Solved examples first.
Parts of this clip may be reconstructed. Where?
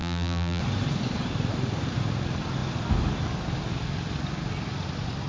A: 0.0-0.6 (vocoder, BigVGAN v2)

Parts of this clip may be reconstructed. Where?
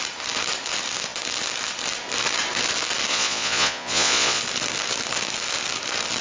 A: 3.1-4.4 (vocoder, Vocos)